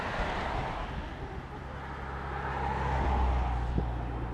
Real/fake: real